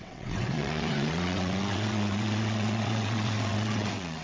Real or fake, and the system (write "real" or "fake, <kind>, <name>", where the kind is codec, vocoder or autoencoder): fake, vocoder, WaveNeXt